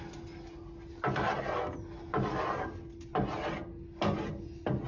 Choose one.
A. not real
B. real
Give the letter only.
B